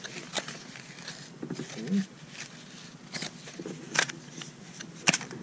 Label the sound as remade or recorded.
remade